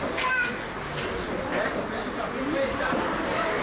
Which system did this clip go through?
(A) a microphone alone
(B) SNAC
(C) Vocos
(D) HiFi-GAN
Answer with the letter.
A